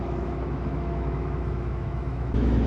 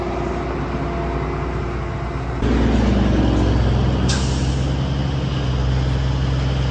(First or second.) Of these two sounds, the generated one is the first